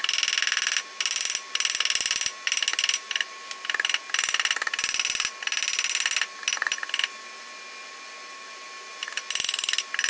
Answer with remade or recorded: recorded